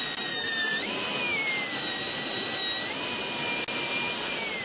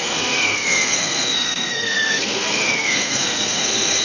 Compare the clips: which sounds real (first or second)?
first